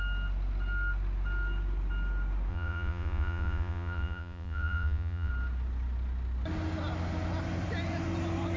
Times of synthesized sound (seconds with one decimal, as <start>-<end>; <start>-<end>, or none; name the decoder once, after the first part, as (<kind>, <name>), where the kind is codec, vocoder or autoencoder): 2.5-5.3 (vocoder, Vocos)